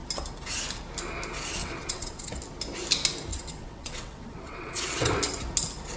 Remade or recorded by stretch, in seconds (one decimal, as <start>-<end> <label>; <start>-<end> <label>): 0.0-1.6 recorded; 1.6-2.4 remade; 2.4-3.3 recorded; 3.3-5.1 remade; 5.1-6.0 recorded